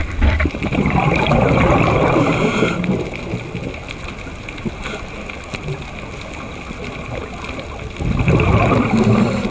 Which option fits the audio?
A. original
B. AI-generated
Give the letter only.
A